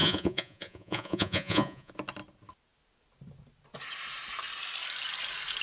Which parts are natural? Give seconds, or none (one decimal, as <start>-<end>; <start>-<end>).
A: 1.9-5.6